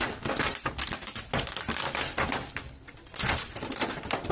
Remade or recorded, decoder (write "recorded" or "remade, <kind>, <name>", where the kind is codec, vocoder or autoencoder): recorded